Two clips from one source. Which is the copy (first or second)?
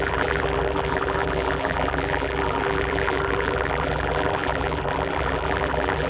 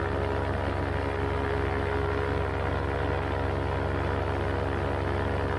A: first